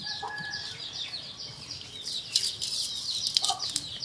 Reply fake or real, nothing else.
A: real